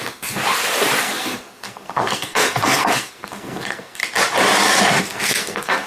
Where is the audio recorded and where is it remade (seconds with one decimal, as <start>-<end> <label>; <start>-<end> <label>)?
0.0-0.4 remade; 0.4-1.0 recorded; 1.0-4.0 remade; 4.0-5.0 recorded; 5.0-5.9 remade